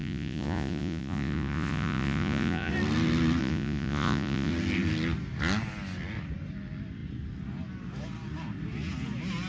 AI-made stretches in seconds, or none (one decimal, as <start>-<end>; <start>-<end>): 0.0-2.7; 3.4-4.5